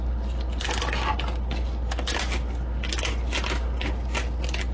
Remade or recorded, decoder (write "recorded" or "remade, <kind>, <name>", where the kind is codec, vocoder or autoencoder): recorded